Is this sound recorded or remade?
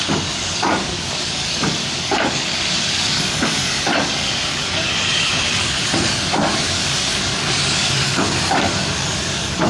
remade